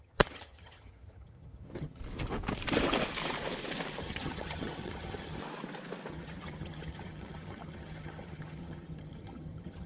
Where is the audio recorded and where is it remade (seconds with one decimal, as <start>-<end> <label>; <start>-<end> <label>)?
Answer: 0.0-2.0 remade; 2.0-4.0 recorded; 4.0-5.4 remade; 5.4-6.1 recorded; 6.1-9.9 remade